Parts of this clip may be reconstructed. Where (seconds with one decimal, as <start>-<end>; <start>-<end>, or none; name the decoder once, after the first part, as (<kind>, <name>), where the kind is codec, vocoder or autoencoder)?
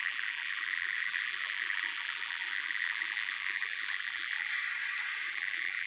0.0-4.5 (vocoder, BigVGAN v2); 5.3-5.9